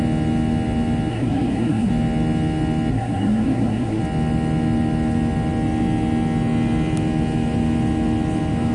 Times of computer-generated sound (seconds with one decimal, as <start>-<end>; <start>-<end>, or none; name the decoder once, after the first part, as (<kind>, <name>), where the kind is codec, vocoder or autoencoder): 1.1-1.9 (codec, SNAC); 2.9-4.0